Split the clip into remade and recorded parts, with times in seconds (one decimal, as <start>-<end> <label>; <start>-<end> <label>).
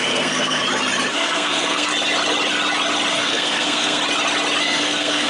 0.0-0.6 remade; 0.6-1.1 recorded; 1.1-1.9 remade; 1.9-3.1 recorded; 3.1-4.0 remade; 4.0-4.6 recorded; 4.6-5.3 remade